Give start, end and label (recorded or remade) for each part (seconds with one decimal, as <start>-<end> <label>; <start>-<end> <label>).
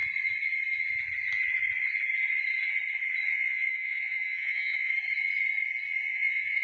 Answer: 0.0-3.3 recorded; 3.3-4.9 remade; 4.9-6.1 recorded; 6.1-6.6 remade